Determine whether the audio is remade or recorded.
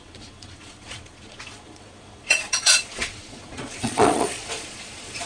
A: remade